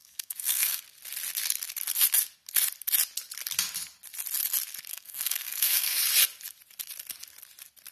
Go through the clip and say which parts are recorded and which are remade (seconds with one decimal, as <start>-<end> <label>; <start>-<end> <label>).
0.0-0.8 remade; 0.8-4.9 recorded; 4.9-6.0 remade; 6.0-7.9 recorded